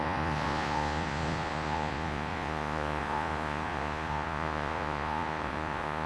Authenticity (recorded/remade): remade